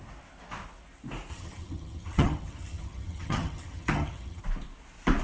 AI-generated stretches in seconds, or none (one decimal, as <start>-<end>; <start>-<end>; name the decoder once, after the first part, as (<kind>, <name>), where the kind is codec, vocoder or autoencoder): 1.3-4.4 (vocoder, HiFi-GAN)